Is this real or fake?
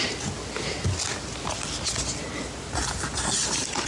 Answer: real